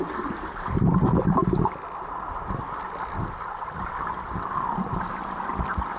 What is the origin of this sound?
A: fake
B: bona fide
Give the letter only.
B